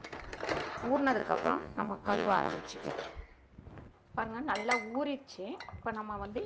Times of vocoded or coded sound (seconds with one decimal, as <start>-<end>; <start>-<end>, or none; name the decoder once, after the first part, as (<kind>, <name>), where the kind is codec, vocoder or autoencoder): 1.2-2.9 (vocoder, Vocos)